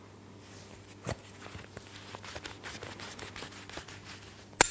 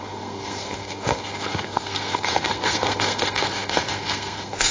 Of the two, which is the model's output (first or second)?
second